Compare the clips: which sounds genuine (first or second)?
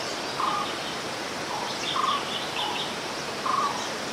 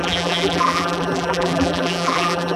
first